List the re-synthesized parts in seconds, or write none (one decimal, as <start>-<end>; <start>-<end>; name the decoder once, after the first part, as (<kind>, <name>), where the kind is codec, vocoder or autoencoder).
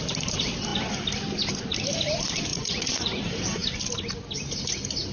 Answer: 2.5-3.2 (vocoder, Vocos)